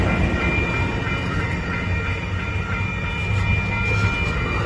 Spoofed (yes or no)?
no